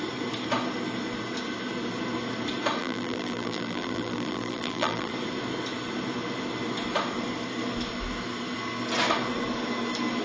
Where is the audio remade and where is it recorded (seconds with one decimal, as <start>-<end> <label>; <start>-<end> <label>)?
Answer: 0.0-2.8 recorded; 2.8-5.1 remade; 5.1-10.2 recorded

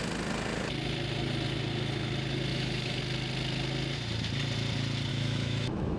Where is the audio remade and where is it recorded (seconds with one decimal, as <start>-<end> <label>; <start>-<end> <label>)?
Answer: 0.0-2.5 recorded; 2.5-3.0 remade; 3.0-5.1 recorded; 5.1-6.0 remade

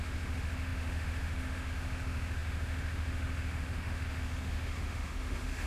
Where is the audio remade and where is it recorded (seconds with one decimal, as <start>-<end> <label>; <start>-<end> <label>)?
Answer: 0.0-5.7 remade

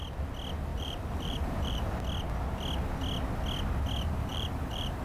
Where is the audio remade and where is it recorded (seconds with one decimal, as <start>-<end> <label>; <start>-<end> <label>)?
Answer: 0.0-0.7 recorded; 0.7-2.0 remade; 2.0-4.3 recorded; 4.3-5.0 remade

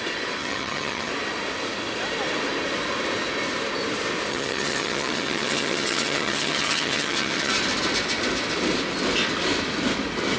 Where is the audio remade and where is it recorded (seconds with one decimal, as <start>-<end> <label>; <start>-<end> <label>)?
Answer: 0.0-0.4 recorded; 0.4-1.1 remade; 1.1-4.3 recorded; 4.3-7.5 remade; 7.5-10.4 recorded

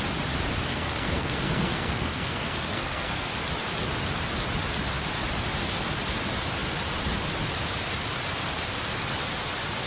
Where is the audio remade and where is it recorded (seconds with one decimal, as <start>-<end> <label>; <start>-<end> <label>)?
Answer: 0.0-0.7 recorded; 0.7-3.3 remade; 3.3-9.9 recorded

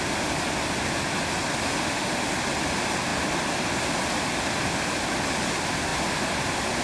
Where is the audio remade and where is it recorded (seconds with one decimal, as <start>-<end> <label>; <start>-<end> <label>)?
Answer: 0.0-1.8 recorded; 1.8-2.3 remade; 2.3-6.8 recorded